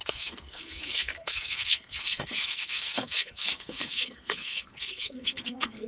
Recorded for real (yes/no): no